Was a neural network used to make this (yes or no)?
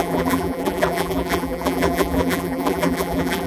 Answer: yes